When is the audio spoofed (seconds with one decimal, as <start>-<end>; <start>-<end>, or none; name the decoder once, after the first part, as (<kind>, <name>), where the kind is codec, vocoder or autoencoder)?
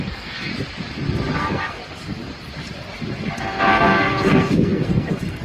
0.0-0.5 (codec, SNAC); 1.3-1.8; 3.4-5.4